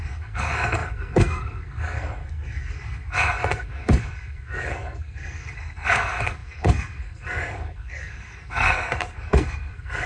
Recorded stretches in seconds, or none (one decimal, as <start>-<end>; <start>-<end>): none